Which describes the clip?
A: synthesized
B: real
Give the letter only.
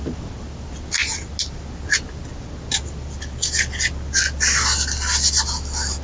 B